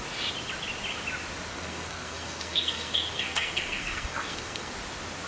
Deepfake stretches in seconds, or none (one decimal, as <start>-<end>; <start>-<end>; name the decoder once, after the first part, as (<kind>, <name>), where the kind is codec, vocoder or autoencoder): 1.5-4.7 (codec, SNAC)